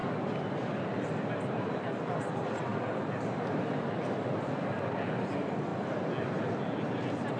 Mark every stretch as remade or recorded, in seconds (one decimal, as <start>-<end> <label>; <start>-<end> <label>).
0.0-7.4 recorded